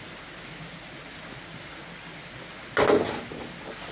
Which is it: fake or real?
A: real